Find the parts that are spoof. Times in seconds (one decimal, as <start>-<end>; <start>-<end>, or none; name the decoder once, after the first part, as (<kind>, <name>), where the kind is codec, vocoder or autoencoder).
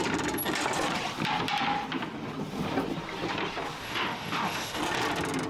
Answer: 3.8-4.8 (autoencoder, DAC-VAE)